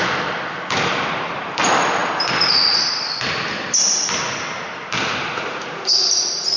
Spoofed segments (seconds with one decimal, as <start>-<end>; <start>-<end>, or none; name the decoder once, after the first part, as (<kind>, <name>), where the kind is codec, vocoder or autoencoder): 0.0-6.6 (vocoder, BigVGAN v2)